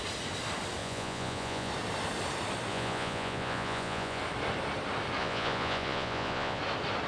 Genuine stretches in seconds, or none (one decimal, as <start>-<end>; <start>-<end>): 0.0-0.8; 1.7-2.7; 4.2-5.2; 6.6-7.1